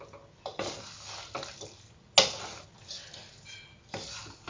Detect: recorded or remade recorded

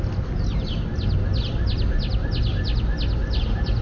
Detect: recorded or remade recorded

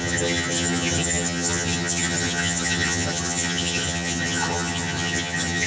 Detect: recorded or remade remade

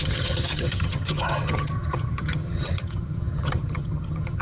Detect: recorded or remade remade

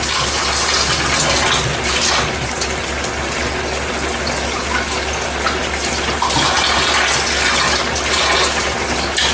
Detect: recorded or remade recorded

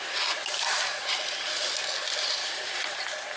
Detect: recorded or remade recorded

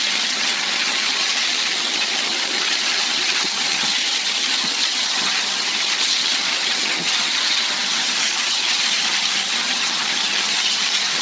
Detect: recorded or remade remade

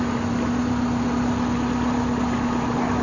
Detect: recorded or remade recorded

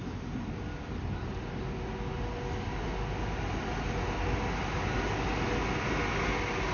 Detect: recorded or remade recorded